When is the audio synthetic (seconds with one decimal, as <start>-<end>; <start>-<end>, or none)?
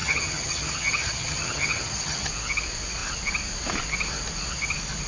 0.0-2.3